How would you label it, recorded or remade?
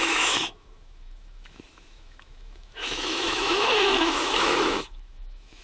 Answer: remade